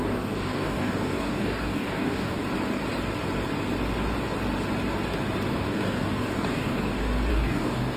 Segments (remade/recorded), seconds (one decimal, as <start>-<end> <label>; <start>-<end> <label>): 0.0-2.4 remade; 2.4-5.5 recorded; 5.5-6.8 remade; 6.8-7.3 recorded; 7.3-8.0 remade